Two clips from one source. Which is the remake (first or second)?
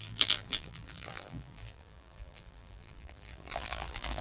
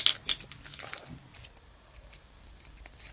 first